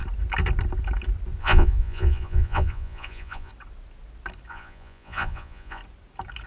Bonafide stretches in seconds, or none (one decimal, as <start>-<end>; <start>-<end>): 0.0-1.4; 3.5-4.5; 5.8-6.5